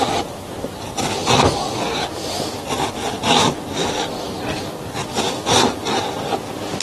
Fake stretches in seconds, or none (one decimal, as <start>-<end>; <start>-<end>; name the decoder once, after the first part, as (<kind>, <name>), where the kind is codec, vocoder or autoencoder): none